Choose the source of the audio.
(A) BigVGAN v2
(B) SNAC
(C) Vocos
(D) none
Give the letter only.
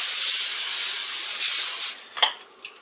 D